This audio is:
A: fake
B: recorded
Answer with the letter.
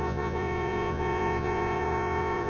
A